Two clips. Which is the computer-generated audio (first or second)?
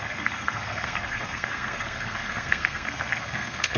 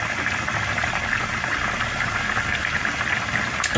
first